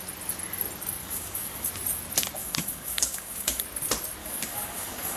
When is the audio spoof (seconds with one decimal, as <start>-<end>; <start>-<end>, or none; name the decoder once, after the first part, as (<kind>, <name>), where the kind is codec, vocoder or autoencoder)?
1.0-1.7 (codec, DAC); 2.4-3.6; 4.2-5.2